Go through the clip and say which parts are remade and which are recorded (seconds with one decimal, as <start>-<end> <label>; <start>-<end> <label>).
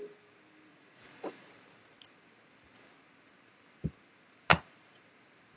0.0-0.7 recorded; 0.7-1.5 remade; 1.5-4.5 recorded; 4.5-5.0 remade; 5.0-5.6 recorded